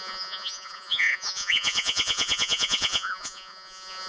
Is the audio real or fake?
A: fake